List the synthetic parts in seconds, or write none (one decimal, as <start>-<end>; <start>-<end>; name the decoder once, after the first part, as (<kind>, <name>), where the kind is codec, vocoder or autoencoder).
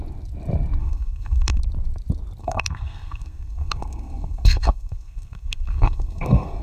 0.8-1.6 (codec, SNAC); 2.4-6.6